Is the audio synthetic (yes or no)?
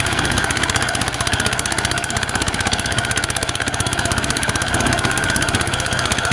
yes